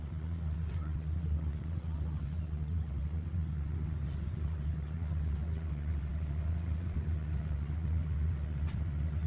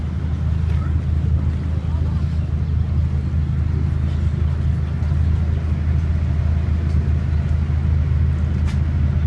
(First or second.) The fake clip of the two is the first